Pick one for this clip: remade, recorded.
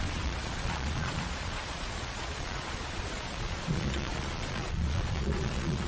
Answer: remade